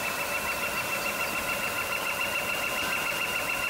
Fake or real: real